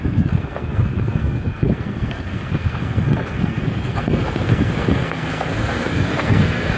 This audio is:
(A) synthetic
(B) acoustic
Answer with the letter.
A